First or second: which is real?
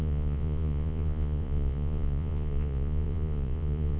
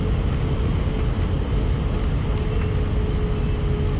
second